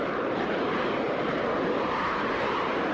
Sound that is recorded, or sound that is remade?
remade